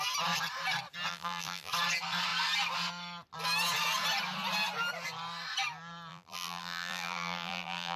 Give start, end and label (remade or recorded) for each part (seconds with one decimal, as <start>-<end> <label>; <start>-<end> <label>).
0.0-1.1 recorded; 1.1-1.7 remade; 1.7-6.1 recorded; 6.1-8.0 remade